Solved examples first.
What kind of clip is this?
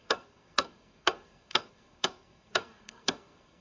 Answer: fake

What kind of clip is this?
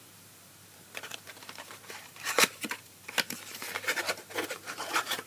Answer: fake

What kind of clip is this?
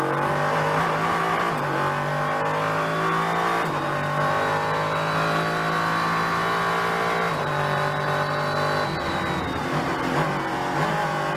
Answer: real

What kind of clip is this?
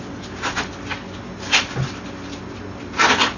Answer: real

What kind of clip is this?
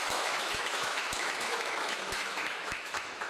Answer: fake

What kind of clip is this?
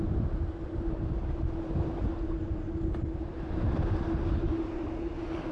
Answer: real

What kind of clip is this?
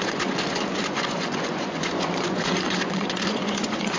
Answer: fake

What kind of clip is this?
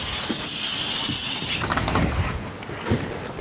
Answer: real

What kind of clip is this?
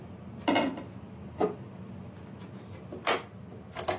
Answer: real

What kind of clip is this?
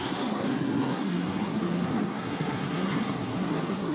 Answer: fake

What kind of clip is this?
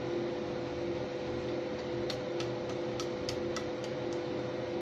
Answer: real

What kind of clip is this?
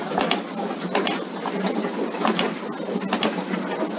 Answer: real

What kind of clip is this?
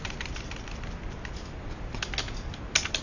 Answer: real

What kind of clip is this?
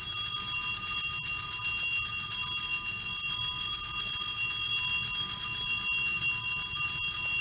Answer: real